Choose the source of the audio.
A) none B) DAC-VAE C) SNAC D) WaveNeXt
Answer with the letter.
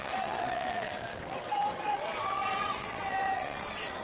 D